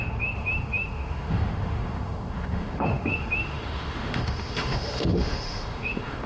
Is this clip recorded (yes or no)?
no